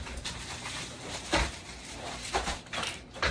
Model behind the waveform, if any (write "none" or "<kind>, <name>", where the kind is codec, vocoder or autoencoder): vocoder, BigVGAN v2